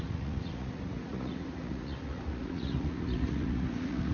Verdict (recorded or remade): remade